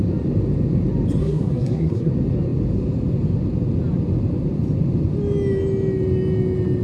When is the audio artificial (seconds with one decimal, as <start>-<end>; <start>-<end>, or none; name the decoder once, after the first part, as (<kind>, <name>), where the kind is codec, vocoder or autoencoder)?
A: 1.2-2.1 (codec, SNAC)